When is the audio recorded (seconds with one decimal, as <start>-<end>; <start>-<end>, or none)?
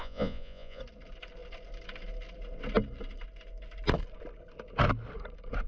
0.8-5.7